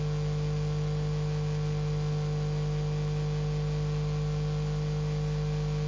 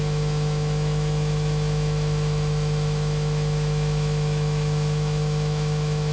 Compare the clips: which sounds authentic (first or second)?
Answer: first